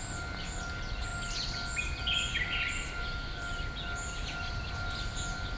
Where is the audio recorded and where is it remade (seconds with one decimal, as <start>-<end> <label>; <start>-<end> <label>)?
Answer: 0.0-5.6 recorded